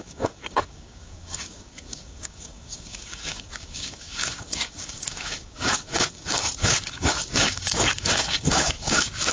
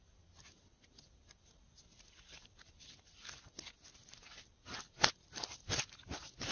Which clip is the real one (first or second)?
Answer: second